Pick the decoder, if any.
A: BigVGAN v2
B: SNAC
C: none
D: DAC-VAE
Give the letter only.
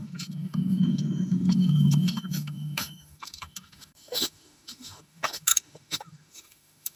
D